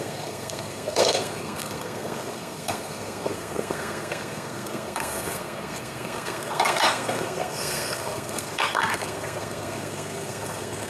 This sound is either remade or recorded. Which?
remade